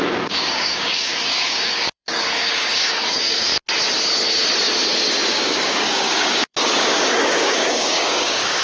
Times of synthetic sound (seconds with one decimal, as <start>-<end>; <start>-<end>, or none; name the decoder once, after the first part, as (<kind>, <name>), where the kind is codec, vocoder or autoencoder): 0.0-3.5 (codec, DAC); 5.3-8.6